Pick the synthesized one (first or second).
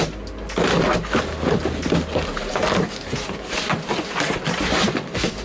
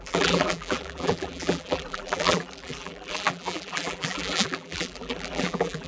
second